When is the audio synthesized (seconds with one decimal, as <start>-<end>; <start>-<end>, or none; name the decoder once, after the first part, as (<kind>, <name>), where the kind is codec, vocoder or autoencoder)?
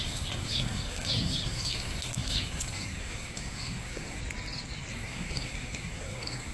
0.0-4.2 (codec, SNAC); 4.9-6.5